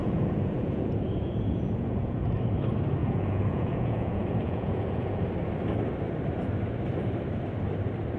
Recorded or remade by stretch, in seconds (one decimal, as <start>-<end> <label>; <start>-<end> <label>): 0.0-2.3 remade; 2.3-3.0 recorded; 3.0-5.2 remade; 5.2-8.2 recorded